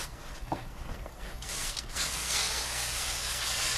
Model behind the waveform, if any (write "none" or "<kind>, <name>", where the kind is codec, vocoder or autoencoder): codec, SNAC